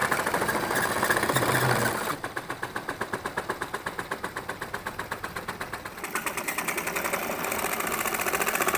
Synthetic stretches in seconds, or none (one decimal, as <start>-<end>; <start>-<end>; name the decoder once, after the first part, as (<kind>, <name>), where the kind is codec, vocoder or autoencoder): none